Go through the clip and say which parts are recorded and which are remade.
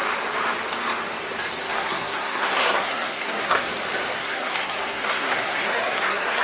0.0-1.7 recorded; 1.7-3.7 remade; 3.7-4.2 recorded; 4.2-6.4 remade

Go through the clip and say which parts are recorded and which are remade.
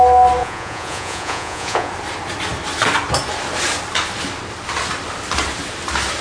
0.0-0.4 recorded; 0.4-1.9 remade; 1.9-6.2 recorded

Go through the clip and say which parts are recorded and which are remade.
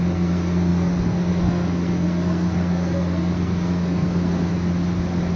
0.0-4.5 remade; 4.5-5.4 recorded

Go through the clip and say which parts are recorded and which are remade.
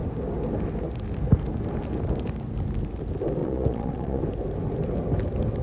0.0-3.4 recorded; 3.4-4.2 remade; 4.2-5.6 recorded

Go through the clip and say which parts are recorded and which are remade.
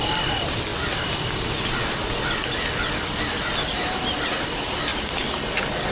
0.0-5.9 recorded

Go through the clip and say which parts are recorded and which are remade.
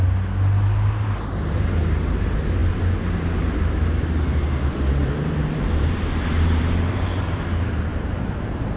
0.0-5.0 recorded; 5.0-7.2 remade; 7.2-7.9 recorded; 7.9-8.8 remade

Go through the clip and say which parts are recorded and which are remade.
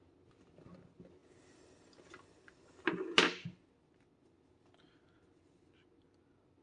0.0-6.6 recorded